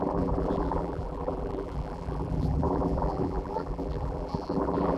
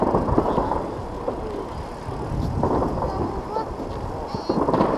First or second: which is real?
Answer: second